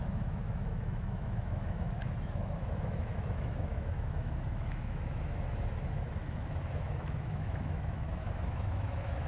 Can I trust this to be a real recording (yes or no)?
no